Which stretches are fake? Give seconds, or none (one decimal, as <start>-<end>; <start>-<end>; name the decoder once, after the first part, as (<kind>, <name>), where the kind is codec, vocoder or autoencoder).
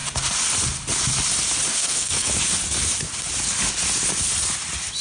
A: 1.7-2.3 (codec, SNAC)